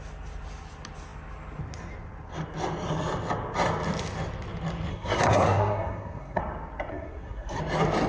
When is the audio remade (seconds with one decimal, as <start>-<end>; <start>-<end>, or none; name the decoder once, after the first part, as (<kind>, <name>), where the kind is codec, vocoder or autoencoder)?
4.9-6.4 (codec, SNAC); 6.9-7.6